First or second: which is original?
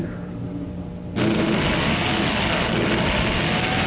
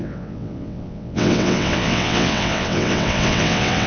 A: first